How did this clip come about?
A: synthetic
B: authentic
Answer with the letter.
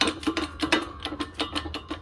B